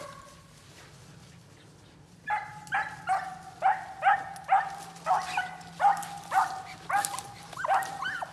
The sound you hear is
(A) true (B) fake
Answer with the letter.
A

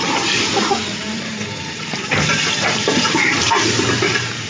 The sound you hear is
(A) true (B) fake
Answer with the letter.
B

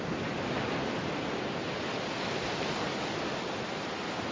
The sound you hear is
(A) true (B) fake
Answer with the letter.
A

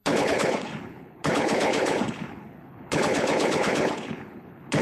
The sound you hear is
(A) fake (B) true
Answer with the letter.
A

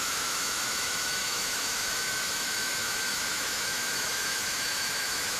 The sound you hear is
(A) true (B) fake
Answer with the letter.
B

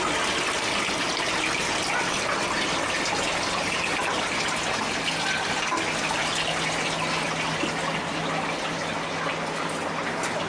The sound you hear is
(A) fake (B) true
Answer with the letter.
B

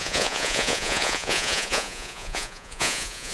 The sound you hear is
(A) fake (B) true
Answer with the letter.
A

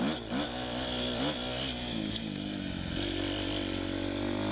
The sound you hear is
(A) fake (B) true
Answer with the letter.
B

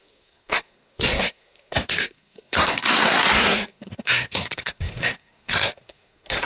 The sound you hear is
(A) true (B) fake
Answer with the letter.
B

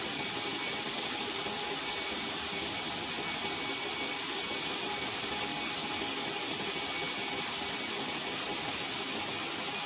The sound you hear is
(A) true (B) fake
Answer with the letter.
A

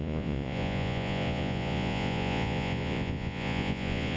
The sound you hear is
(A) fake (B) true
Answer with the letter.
A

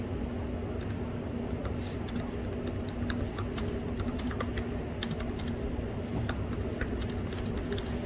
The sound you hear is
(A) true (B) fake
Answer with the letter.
A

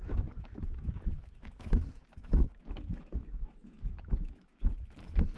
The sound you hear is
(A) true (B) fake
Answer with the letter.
B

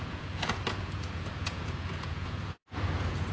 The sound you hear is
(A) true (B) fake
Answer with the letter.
B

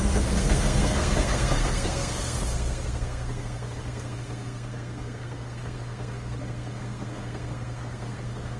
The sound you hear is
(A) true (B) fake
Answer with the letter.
B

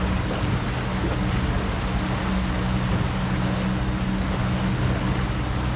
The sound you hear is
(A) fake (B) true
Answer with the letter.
B